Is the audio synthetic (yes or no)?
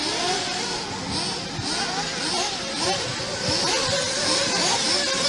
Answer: no